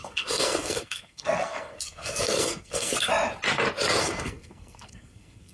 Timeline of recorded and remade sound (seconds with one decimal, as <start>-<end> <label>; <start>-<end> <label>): 0.0-3.1 remade; 3.1-4.0 recorded; 4.0-5.5 remade